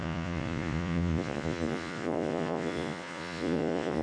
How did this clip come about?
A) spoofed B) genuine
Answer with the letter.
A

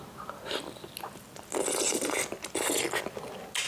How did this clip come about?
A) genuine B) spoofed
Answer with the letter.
A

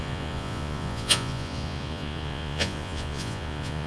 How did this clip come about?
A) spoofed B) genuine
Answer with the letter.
A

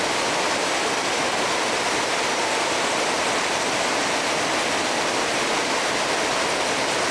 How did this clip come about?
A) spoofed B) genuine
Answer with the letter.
B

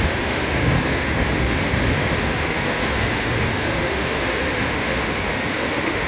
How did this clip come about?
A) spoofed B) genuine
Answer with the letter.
A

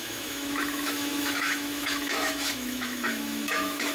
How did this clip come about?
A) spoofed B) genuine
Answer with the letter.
A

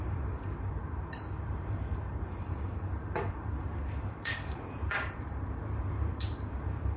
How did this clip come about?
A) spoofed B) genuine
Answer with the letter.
A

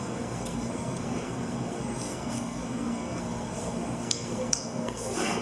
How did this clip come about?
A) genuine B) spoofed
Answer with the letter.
B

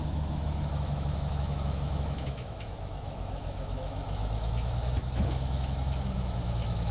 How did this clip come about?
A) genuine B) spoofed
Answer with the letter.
B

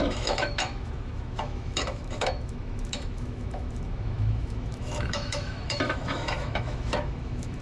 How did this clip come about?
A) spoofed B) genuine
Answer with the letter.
A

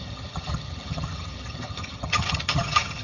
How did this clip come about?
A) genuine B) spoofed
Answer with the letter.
B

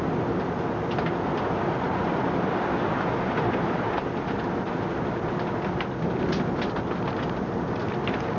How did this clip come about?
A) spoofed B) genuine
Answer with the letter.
B